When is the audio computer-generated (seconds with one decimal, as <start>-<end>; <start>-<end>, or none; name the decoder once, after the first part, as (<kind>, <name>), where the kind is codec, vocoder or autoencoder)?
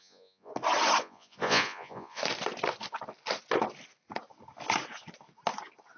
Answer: 0.0-0.5 (vocoder, Vocos); 1.0-2.2